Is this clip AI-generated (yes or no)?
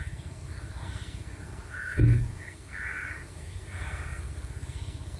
yes